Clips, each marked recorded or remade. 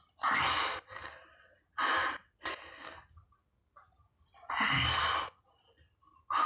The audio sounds recorded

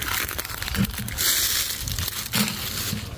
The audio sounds recorded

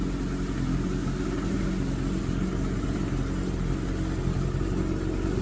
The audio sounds recorded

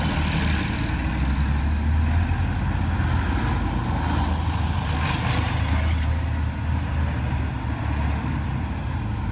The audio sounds recorded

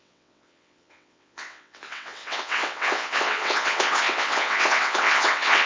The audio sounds remade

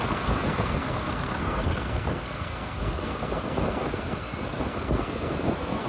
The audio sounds remade